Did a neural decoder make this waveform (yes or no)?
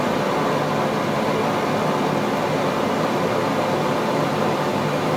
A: no